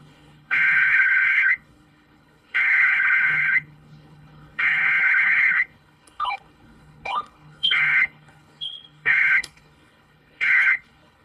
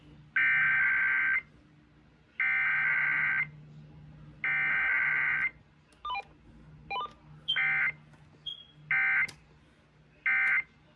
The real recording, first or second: second